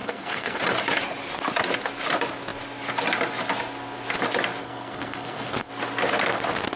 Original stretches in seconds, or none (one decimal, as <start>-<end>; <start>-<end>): 0.6-4.6; 5.7-6.8